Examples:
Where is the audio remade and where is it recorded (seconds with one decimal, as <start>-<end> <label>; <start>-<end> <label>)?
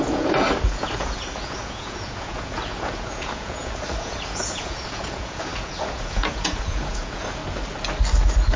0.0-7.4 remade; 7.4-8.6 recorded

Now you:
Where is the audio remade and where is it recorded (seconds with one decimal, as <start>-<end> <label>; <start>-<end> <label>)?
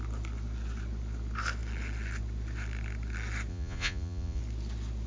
0.0-3.5 recorded; 3.5-4.4 remade; 4.4-5.1 recorded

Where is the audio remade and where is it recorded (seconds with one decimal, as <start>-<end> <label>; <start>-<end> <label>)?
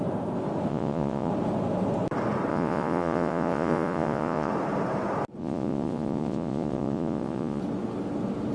0.0-0.7 recorded; 0.7-1.3 remade; 1.3-2.5 recorded; 2.5-4.5 remade; 4.5-5.4 recorded; 5.4-7.6 remade; 7.6-8.5 recorded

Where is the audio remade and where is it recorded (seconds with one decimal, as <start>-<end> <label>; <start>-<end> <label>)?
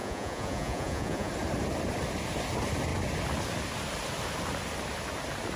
0.0-1.3 remade; 1.3-5.6 recorded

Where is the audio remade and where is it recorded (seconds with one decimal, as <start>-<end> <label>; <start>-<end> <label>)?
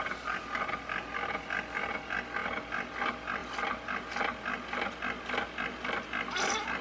0.0-6.8 recorded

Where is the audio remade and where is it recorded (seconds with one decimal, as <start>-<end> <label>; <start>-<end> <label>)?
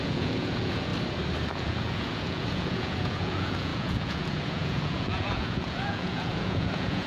0.0-0.9 remade; 0.9-1.5 recorded; 1.5-7.1 remade